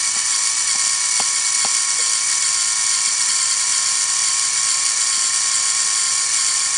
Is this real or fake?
real